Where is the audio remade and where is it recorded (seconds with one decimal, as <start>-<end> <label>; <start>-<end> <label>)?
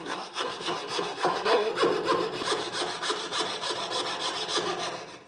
0.0-1.7 remade; 1.7-5.3 recorded